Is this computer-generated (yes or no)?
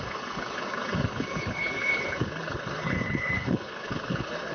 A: yes